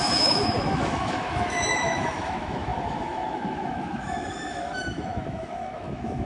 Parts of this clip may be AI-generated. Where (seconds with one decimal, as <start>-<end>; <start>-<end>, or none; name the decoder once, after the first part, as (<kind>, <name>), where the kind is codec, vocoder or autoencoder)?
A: 0.0-6.3 (autoencoder, DAC-VAE)